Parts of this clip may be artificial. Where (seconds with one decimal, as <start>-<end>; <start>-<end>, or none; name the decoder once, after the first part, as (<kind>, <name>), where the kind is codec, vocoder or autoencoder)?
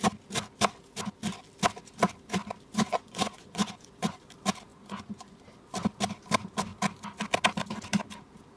2.7-4.2 (vocoder, Vocos); 4.7-5.4